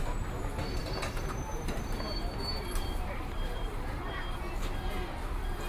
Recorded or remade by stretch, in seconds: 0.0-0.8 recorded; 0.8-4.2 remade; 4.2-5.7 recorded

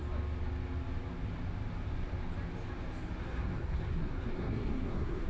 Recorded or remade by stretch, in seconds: 0.0-3.2 recorded; 3.2-5.3 remade

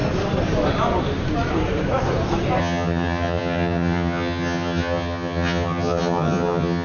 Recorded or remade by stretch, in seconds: 0.0-2.6 recorded; 2.6-6.8 remade

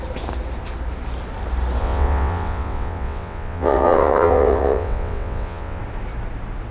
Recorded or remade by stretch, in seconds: 0.0-1.8 recorded; 1.8-5.8 remade; 5.8-6.7 recorded

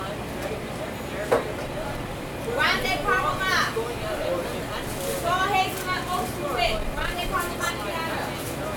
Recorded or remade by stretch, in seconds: 0.0-8.8 recorded

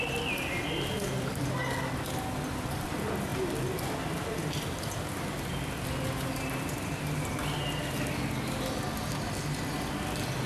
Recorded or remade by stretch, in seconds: 0.0-10.5 recorded